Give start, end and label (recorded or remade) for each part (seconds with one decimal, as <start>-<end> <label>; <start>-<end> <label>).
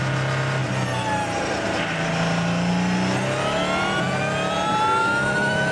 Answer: 0.0-5.0 recorded; 5.0-5.7 remade